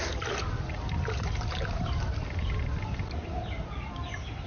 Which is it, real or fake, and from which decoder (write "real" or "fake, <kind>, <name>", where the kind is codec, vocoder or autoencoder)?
real